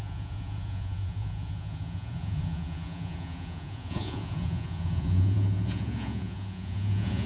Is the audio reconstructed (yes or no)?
yes